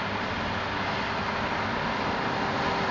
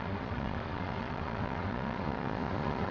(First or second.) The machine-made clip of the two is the second